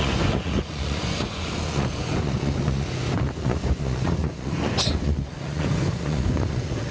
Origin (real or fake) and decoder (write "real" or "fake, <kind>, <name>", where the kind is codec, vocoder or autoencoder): fake, vocoder, Vocos